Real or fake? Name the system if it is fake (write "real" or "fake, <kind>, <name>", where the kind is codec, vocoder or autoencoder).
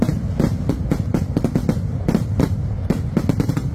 real